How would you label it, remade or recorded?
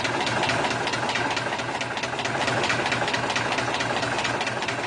recorded